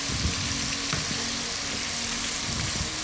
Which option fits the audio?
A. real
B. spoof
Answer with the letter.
A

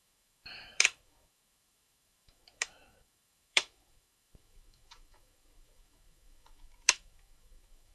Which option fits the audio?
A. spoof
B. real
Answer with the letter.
A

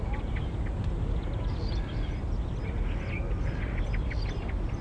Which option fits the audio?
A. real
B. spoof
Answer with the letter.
A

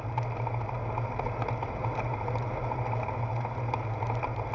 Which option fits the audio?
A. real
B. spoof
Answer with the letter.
A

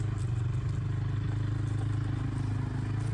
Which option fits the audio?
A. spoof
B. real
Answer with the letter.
B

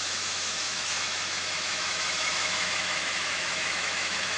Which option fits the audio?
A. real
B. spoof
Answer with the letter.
B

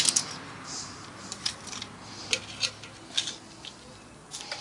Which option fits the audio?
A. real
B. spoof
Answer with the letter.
A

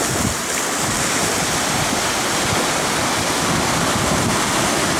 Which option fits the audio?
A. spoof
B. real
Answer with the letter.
B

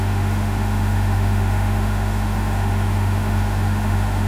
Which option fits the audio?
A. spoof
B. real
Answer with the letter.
A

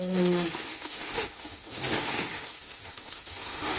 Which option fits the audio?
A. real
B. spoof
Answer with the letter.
B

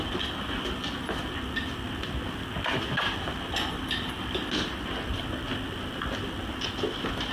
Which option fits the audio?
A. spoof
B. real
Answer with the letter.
B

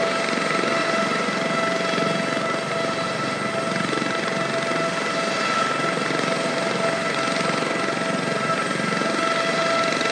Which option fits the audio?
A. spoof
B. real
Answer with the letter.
B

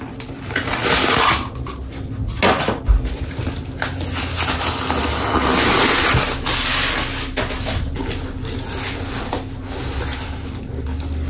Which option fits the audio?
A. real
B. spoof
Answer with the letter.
A